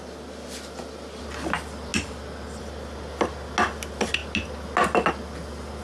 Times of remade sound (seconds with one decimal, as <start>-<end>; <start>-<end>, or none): none